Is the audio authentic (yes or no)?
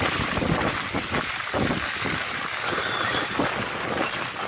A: yes